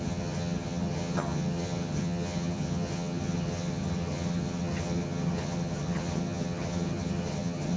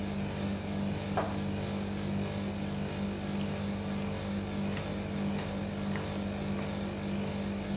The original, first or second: second